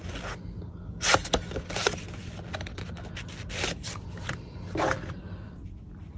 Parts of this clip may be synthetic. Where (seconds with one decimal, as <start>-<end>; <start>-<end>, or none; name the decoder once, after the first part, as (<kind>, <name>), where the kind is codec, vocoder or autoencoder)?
none